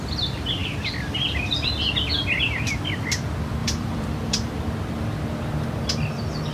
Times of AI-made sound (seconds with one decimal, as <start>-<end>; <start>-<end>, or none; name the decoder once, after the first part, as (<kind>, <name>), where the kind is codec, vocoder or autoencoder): 0.6-1.7 (vocoder, BigVGAN v2); 3.6-4.6